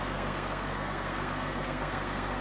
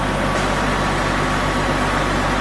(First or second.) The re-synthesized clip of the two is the first